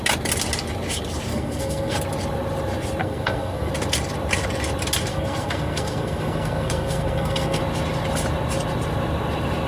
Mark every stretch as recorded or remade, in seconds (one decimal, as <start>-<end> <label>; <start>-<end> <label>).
0.0-1.3 recorded; 1.3-2.0 remade; 2.0-3.0 recorded; 3.0-3.7 remade; 3.7-5.1 recorded; 5.1-7.6 remade; 7.6-9.7 recorded